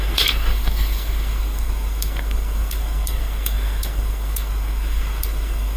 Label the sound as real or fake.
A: fake